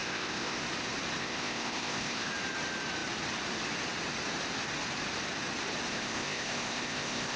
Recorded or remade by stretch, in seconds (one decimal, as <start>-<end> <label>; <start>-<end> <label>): 0.0-0.6 remade; 0.6-1.2 recorded; 1.2-2.3 remade; 2.3-5.9 recorded; 5.9-7.4 remade